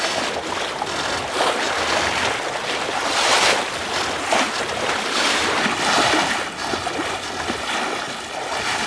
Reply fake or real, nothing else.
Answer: real